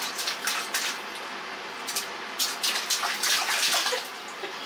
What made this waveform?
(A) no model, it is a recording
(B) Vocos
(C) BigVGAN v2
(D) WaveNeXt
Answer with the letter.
A